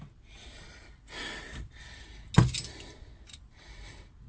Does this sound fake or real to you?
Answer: real